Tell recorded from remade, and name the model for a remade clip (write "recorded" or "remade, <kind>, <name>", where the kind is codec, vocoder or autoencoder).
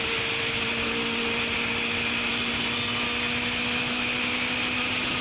recorded